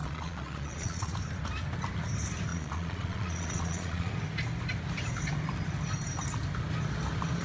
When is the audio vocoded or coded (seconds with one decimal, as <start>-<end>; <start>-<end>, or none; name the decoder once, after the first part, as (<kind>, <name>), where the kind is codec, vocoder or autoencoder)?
0.0-1.1 (vocoder, Vocos); 2.5-4.1